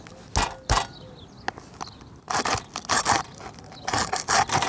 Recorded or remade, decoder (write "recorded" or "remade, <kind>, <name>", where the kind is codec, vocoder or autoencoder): recorded